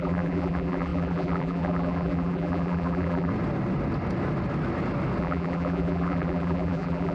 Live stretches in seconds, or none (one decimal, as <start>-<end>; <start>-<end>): 3.3-5.2